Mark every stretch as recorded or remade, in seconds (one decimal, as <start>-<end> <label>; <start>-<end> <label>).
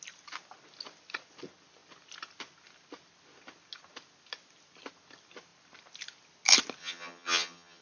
0.0-6.8 recorded; 6.8-7.8 remade